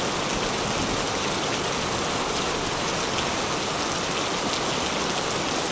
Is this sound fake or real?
real